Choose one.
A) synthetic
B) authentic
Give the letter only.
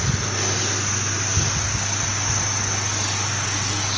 B